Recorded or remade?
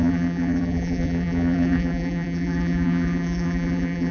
remade